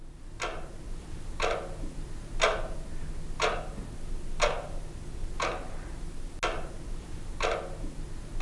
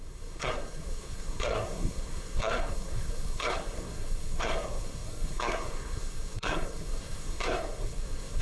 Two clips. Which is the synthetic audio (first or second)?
second